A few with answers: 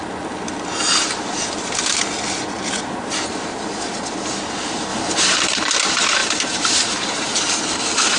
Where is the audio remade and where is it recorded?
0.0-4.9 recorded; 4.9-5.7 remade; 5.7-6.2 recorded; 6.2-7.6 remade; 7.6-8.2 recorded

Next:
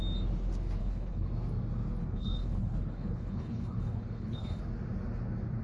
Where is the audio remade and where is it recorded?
0.0-0.8 recorded; 0.8-1.3 remade; 1.3-2.0 recorded; 2.0-4.6 remade; 4.6-5.6 recorded

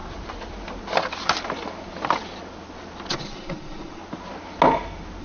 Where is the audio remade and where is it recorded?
0.0-3.1 recorded; 3.1-4.0 remade; 4.0-5.2 recorded

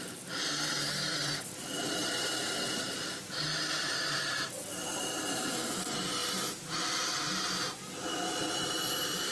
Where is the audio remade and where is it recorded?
0.0-9.3 recorded